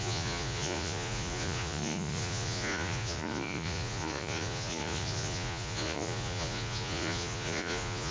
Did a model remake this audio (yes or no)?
yes